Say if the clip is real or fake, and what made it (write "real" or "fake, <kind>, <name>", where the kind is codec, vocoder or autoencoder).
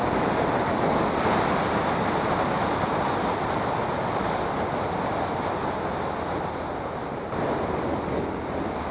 real